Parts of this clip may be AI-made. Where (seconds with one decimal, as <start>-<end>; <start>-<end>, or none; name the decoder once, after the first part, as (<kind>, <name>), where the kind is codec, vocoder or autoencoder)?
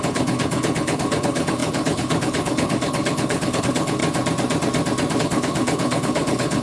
0.0-4.0 (codec, HILCodec); 5.2-6.6